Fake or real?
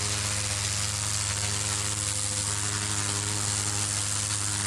real